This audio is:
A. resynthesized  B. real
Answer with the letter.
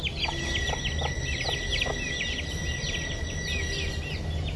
B